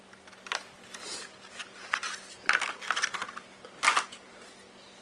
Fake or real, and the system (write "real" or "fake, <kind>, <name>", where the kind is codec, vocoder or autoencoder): real